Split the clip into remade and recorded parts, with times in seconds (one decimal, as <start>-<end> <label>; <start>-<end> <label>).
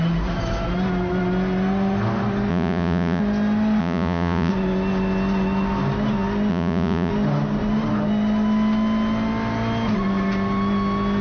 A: 0.0-2.5 recorded; 2.5-3.2 remade; 3.2-3.8 recorded; 3.8-4.5 remade; 4.5-6.5 recorded; 6.5-7.1 remade; 7.1-11.2 recorded